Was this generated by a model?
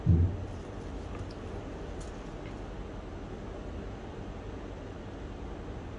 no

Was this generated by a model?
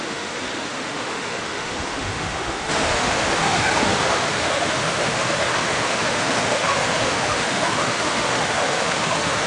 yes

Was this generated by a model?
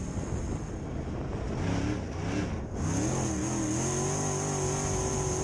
no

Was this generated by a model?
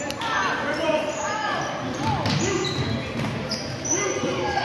no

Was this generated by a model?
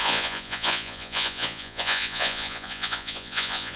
yes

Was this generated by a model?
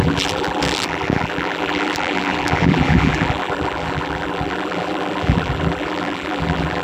yes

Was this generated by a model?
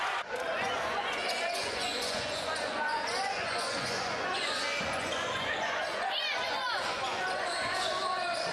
yes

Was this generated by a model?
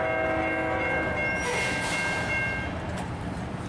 no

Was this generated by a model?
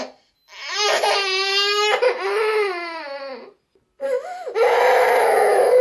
no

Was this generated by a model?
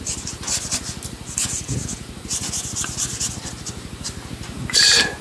no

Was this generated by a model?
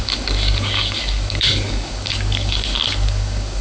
yes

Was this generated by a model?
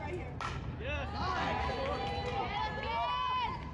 no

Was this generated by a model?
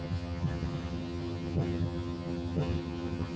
yes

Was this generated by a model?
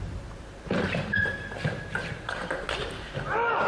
yes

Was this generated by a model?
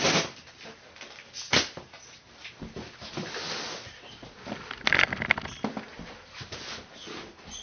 no